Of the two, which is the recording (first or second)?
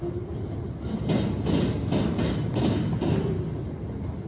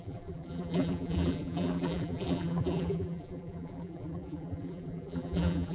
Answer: first